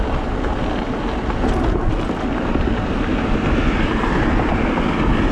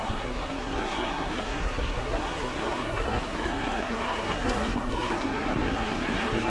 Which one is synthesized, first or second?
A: second